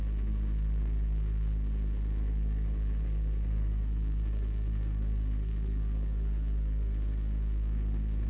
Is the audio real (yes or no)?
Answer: no